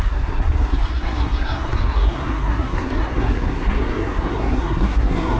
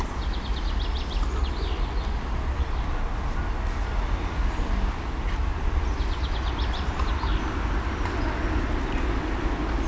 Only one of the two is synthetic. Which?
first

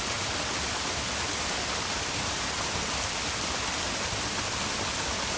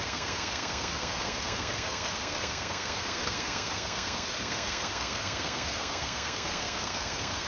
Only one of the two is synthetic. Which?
second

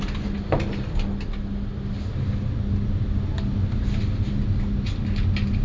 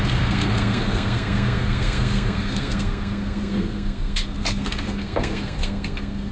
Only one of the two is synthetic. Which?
second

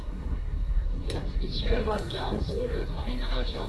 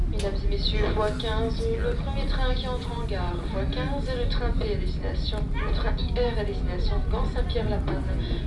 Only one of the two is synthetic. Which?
first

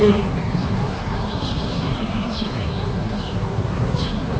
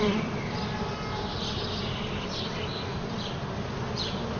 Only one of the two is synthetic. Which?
first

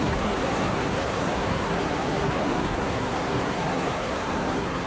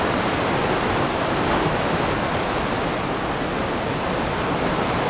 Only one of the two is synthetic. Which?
first